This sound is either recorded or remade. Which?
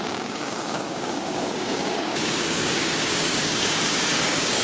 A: remade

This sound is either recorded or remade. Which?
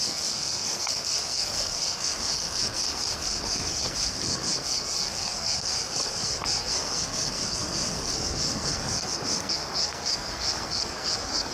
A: remade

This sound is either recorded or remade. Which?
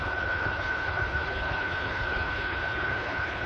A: remade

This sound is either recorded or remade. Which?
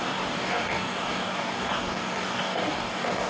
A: remade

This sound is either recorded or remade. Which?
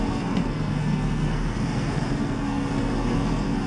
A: remade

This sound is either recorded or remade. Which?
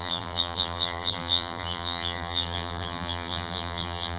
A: remade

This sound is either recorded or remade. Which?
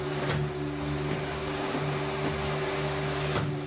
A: recorded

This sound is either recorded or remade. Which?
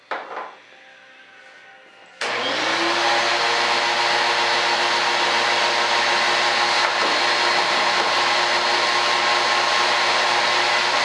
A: recorded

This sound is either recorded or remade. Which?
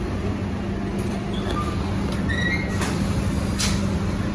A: recorded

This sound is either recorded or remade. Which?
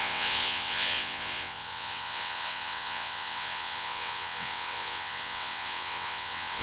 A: remade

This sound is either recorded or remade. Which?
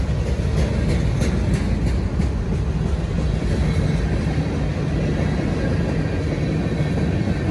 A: recorded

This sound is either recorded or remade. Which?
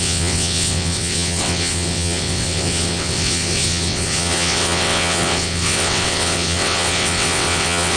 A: remade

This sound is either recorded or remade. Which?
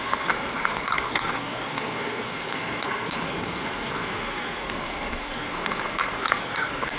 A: remade